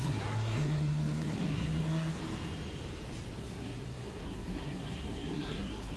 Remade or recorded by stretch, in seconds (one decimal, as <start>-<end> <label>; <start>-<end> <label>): 0.0-2.2 remade; 2.2-3.4 recorded; 3.4-6.0 remade